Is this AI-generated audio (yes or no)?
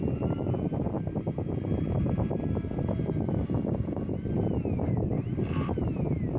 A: yes